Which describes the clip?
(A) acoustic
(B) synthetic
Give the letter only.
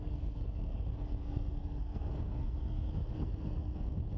B